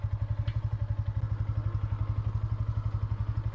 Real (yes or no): yes